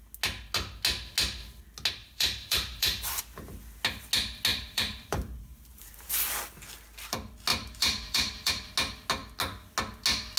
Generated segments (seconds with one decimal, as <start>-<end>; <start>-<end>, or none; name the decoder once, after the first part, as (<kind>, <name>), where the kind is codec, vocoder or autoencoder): 2.0-3.2 (vocoder, BigVGAN v2); 4.5-6.1; 7.5-8.5